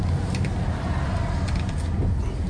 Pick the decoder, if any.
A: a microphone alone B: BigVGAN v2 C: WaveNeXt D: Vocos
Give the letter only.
A